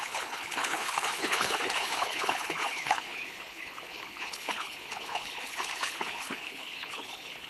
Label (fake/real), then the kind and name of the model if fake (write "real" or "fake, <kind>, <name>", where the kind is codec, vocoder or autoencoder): fake, codec, HILCodec